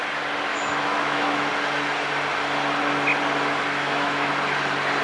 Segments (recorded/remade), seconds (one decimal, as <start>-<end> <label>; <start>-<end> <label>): 0.0-0.5 recorded; 0.5-1.5 remade; 1.5-3.8 recorded; 3.8-4.3 remade; 4.3-5.0 recorded